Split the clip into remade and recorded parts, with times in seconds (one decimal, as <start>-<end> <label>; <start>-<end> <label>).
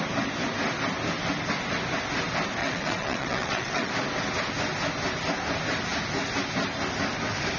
0.0-2.6 recorded; 2.6-3.9 remade; 3.9-7.6 recorded